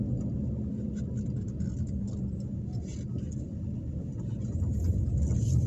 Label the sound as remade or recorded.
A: recorded